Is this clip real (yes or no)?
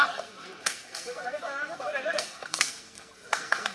no